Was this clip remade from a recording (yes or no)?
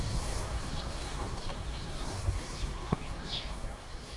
yes